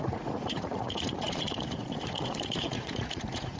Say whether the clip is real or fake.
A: fake